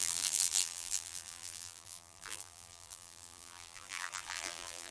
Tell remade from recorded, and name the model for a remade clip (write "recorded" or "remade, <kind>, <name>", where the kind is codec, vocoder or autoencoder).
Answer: remade, vocoder, BigVGAN v2